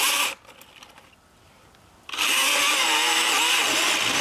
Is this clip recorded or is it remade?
recorded